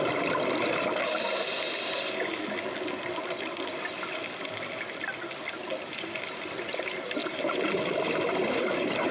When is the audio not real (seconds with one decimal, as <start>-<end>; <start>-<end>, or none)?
7.2-7.8